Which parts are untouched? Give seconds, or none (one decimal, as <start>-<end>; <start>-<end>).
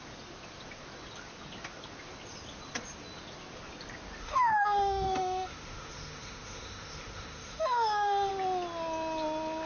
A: 0.0-4.2; 8.3-9.7